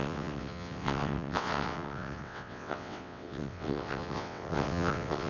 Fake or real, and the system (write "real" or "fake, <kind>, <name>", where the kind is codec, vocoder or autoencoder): fake, vocoder, WaveNeXt